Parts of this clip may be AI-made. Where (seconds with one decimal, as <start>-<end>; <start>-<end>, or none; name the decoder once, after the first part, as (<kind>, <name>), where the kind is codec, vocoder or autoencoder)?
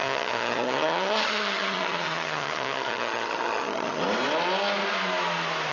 0.0-4.0 (vocoder, HiFi-GAN)